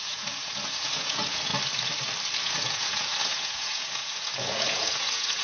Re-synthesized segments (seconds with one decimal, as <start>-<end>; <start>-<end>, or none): 0.0-1.5; 2.4-5.4